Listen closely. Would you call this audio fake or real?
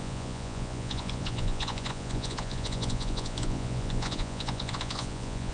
fake